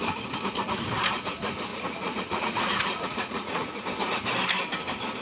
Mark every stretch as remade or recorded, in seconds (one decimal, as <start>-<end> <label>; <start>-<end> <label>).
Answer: 0.0-1.7 recorded; 1.7-3.8 remade; 3.8-5.2 recorded